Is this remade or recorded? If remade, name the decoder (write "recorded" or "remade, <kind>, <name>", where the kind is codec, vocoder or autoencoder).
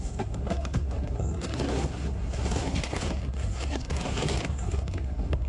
remade, codec, SNAC